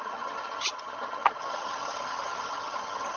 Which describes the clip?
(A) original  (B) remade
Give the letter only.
B